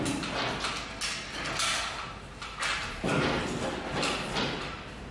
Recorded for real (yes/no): yes